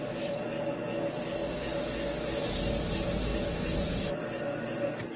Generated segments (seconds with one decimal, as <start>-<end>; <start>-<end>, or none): none